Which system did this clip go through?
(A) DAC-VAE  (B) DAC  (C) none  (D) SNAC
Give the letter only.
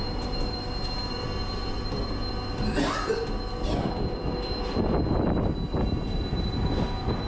C